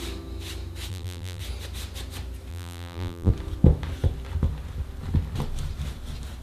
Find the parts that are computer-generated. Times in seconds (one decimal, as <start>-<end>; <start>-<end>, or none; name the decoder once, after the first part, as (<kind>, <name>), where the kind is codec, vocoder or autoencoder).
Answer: 0.9-1.4 (vocoder, BigVGAN v2); 2.5-3.3